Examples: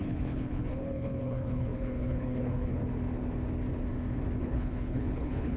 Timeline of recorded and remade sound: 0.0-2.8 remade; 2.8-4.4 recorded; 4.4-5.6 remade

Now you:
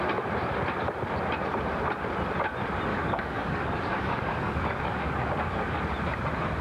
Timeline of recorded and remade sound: 0.0-2.9 recorded; 2.9-5.8 remade; 5.8-6.6 recorded